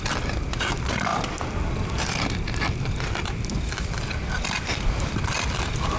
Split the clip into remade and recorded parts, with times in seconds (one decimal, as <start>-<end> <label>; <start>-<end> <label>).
0.0-1.1 remade; 1.1-4.7 recorded; 4.7-6.0 remade